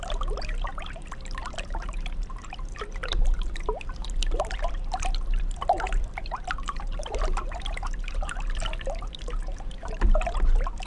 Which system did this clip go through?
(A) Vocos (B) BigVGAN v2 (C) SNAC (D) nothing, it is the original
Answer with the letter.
B